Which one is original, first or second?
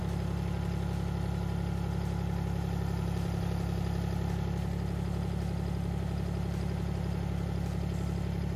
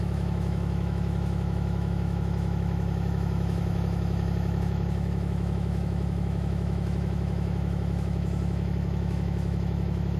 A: first